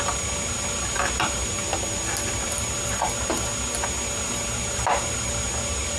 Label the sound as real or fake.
real